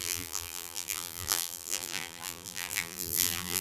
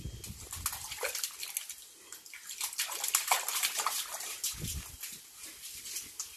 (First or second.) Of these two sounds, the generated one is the first